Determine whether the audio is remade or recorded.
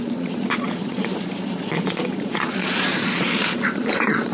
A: remade